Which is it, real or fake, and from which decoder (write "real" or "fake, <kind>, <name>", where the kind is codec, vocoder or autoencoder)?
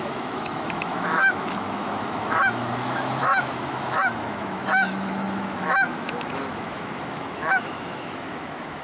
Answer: fake, autoencoder, DAC-VAE